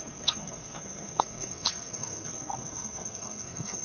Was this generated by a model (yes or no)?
yes